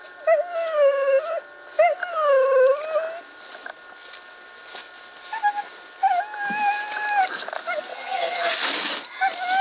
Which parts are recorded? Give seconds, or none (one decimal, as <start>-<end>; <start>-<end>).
0.0-7.9; 8.5-9.6